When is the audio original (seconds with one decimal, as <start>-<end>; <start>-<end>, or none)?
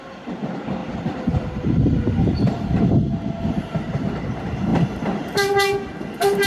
0.0-0.8; 1.9-4.7; 5.2-6.5